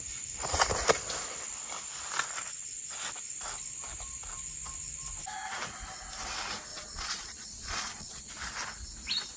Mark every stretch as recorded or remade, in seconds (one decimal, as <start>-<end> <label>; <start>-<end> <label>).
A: 0.0-6.7 recorded; 6.7-8.3 remade; 8.3-9.4 recorded